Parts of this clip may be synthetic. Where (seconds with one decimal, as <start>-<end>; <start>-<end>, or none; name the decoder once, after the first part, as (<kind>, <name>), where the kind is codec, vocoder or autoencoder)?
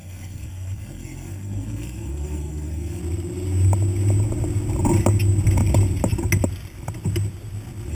0.0-3.0 (codec, SNAC)